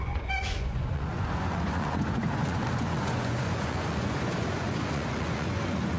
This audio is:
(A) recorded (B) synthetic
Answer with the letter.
B